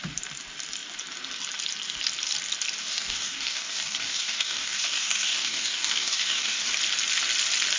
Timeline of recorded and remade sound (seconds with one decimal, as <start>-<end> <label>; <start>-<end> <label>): 0.0-2.8 recorded; 2.8-6.7 remade; 6.7-7.8 recorded